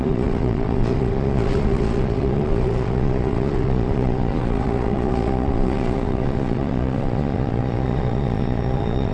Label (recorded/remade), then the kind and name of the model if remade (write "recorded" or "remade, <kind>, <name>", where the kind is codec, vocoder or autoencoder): remade, vocoder, Vocos